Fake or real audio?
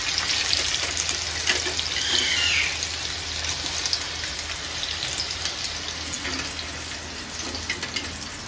real